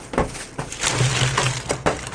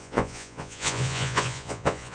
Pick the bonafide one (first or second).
first